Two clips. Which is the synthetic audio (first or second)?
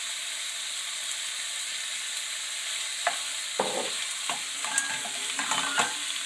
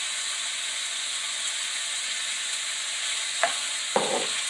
second